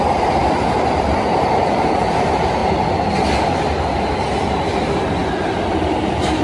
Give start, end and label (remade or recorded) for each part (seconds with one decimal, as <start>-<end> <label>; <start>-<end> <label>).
0.0-2.6 remade; 2.6-4.4 recorded; 4.4-6.4 remade